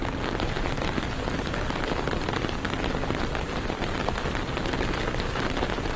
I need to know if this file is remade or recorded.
recorded